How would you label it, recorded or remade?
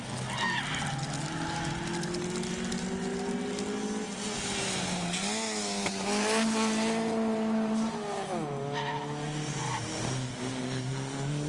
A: recorded